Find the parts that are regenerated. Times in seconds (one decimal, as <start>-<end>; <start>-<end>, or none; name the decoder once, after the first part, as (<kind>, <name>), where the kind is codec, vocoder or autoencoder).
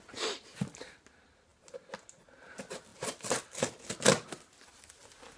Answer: none